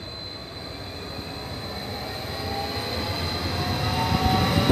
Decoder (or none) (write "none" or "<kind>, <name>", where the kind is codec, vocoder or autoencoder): none